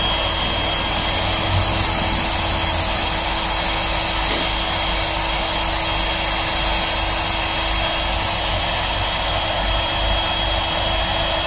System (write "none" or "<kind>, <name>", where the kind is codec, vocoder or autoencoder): none